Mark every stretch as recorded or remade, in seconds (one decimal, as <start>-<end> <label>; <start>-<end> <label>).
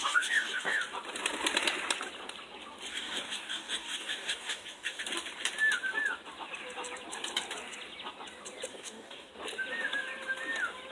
0.0-0.8 remade; 0.8-2.9 recorded; 2.9-5.0 remade; 5.0-8.7 recorded; 8.7-9.3 remade; 9.3-10.9 recorded